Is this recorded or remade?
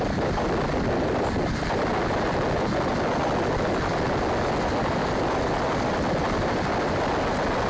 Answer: recorded